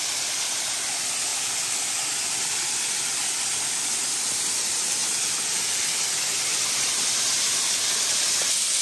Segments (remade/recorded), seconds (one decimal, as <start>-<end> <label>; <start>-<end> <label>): 0.0-8.8 recorded

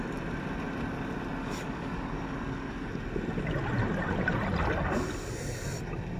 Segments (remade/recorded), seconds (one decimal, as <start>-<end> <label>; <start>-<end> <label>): 0.0-1.4 recorded; 1.4-2.9 remade; 2.9-6.2 recorded

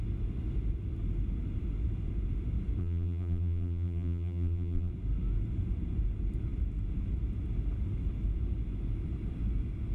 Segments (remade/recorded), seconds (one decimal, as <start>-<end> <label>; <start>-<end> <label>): 0.0-2.8 recorded; 2.8-4.9 remade; 4.9-9.9 recorded

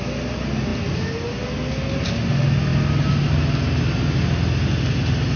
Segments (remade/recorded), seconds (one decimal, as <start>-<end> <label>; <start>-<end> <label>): 0.0-5.4 recorded